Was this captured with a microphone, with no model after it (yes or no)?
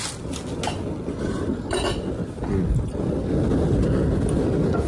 yes